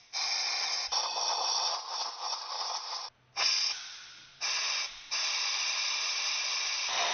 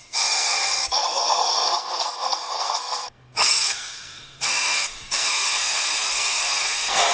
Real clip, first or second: first